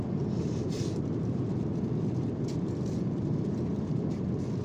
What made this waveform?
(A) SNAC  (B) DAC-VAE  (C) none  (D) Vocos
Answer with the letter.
C